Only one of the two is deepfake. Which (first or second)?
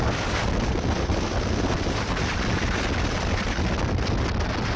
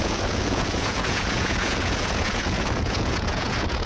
second